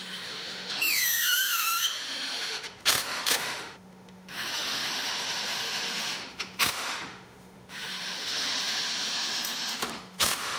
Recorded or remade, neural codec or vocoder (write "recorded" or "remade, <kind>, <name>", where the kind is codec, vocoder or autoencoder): remade, autoencoder, DAC-VAE